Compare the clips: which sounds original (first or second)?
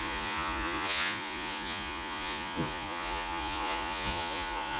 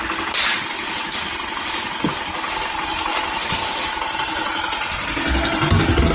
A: second